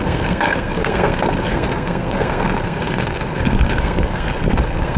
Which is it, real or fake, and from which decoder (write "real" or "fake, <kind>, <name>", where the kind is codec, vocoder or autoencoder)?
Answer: fake, codec, SNAC